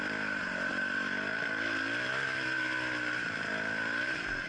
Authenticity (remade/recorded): recorded